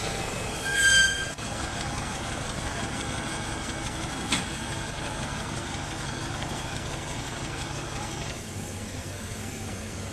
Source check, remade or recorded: remade